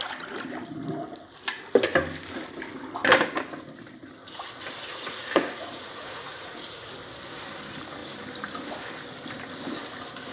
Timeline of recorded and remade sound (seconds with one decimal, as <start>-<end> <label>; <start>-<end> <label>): 0.0-4.9 recorded; 4.9-6.9 remade; 6.9-10.3 recorded

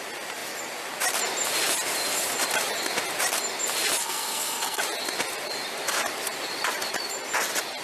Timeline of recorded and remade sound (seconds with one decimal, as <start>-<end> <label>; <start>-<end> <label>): 0.0-4.0 recorded; 4.0-4.8 remade; 4.8-7.8 recorded

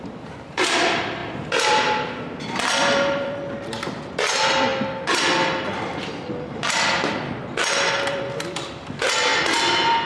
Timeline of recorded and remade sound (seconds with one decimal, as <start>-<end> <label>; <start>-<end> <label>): 0.0-1.2 remade; 1.2-1.7 recorded; 1.7-4.7 remade; 4.7-7.6 recorded; 7.6-10.1 remade

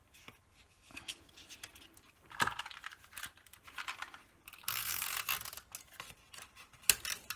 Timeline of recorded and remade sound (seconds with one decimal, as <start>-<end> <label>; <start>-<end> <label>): 0.0-4.6 recorded; 4.6-5.1 remade; 5.1-7.4 recorded

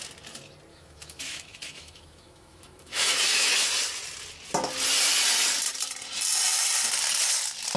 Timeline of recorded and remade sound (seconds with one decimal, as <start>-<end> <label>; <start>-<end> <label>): 0.0-0.7 recorded; 0.7-3.7 remade; 3.7-7.8 recorded

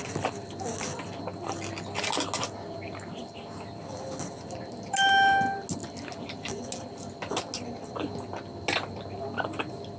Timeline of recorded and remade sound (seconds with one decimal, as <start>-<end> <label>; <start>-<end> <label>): 0.0-10.0 recorded

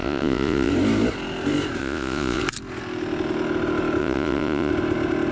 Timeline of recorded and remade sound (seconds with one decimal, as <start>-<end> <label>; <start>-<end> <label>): 0.0-0.7 remade; 0.7-1.8 recorded; 1.8-2.4 remade; 2.4-4.0 recorded; 4.0-4.7 remade; 4.7-5.3 recorded

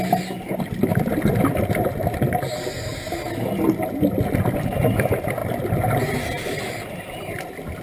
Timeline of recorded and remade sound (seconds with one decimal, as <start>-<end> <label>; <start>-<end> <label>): 0.0-7.8 recorded